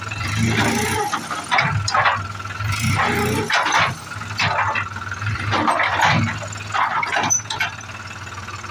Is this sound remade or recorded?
recorded